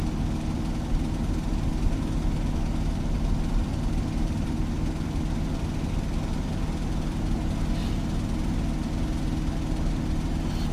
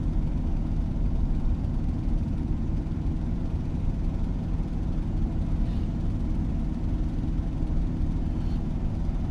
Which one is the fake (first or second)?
second